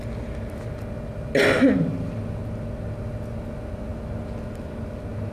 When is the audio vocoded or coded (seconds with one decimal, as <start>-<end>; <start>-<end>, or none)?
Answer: none